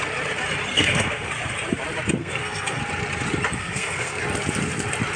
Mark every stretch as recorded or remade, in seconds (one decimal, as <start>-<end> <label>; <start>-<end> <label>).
0.0-0.7 recorded; 0.7-1.3 remade; 1.3-2.2 recorded; 2.2-2.8 remade; 2.8-3.6 recorded; 3.6-4.2 remade; 4.2-5.2 recorded

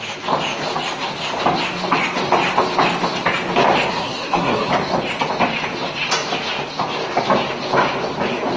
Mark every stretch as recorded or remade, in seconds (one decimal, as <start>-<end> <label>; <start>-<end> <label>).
0.0-3.9 recorded; 3.9-4.7 remade; 4.7-8.6 recorded

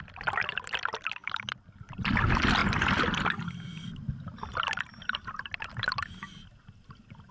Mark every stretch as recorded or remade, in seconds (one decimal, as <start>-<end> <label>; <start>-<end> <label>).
0.0-7.3 recorded

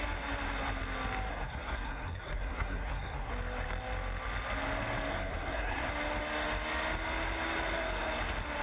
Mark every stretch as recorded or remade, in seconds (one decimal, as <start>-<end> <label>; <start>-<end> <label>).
0.0-1.3 recorded; 1.3-3.3 remade; 3.3-5.1 recorded; 5.1-5.9 remade; 5.9-8.6 recorded

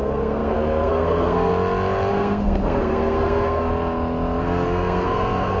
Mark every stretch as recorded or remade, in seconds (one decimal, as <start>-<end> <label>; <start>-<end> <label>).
0.0-1.5 remade; 1.5-2.1 recorded; 2.1-3.7 remade; 3.7-4.4 recorded; 4.4-5.6 remade

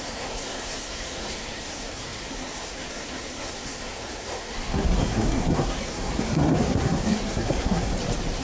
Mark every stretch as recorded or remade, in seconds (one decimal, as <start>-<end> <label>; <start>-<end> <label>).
0.0-7.9 remade; 7.9-8.4 recorded